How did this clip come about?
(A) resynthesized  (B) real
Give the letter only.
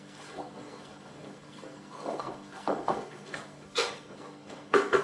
A